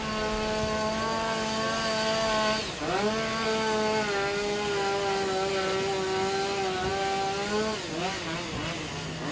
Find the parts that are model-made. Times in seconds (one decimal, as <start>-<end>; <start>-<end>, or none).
none